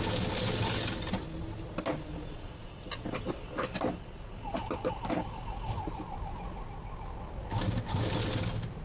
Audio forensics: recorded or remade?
recorded